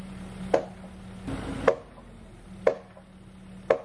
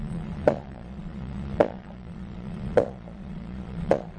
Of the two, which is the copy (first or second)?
second